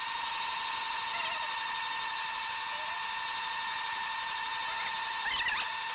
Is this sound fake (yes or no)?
no